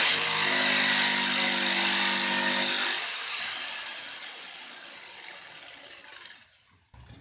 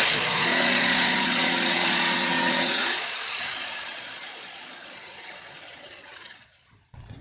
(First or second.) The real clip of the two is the first